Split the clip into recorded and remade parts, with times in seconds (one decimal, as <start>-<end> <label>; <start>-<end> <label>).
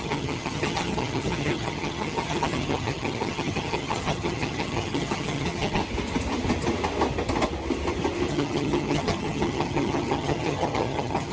0.0-5.8 remade; 5.8-8.3 recorded; 8.3-11.3 remade